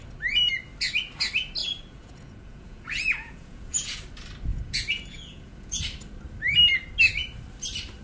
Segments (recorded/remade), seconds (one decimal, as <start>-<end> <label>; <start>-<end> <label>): 0.0-1.6 recorded; 1.6-4.0 remade; 4.0-4.5 recorded; 4.5-5.8 remade; 5.8-8.0 recorded